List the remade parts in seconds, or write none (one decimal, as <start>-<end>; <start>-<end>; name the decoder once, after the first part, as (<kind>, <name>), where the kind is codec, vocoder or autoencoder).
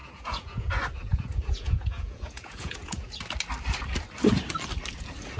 0.0-0.7 (vocoder, Vocos); 1.1-3.1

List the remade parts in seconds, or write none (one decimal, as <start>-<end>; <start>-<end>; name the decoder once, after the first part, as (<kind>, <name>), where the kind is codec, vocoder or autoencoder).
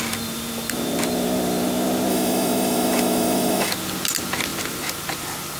2.1-3.7 (autoencoder, DAC-VAE)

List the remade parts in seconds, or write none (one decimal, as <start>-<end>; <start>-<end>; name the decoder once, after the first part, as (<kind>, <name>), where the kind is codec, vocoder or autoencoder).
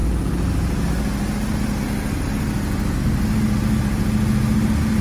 none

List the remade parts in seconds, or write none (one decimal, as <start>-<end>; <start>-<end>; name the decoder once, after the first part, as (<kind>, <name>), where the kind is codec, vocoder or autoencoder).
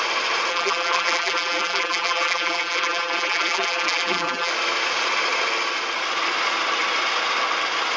0.5-4.5 (vocoder, BigVGAN v2)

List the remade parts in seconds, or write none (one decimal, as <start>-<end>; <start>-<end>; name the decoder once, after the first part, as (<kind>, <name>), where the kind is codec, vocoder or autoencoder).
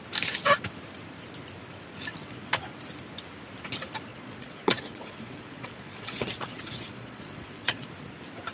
2.1-2.6 (vocoder, Vocos); 4.1-7.9